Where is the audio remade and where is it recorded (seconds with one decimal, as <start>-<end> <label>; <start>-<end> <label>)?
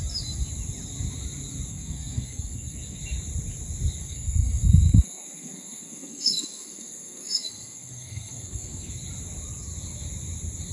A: 0.0-1.7 recorded; 1.7-3.0 remade; 3.0-4.0 recorded; 4.0-8.9 remade; 8.9-10.7 recorded